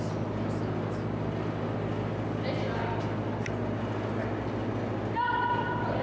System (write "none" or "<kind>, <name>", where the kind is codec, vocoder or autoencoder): none